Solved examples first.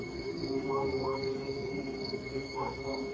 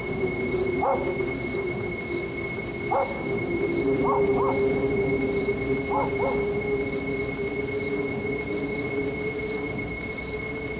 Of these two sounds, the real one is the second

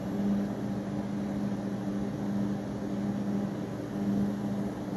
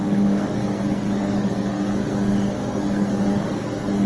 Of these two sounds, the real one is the first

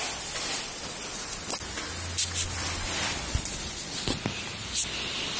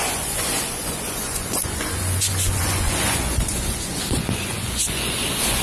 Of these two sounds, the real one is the first